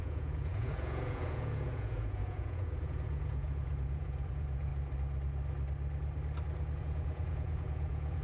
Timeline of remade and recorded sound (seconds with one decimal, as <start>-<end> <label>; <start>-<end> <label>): 0.0-4.7 remade; 4.7-6.8 recorded; 6.8-8.2 remade